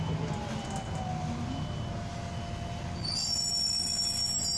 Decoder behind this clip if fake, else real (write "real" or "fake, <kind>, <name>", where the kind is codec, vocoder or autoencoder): real